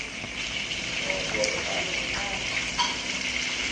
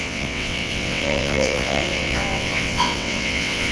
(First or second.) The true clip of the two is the first